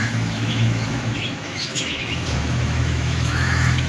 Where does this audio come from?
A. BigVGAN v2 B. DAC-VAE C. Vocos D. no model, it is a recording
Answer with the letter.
B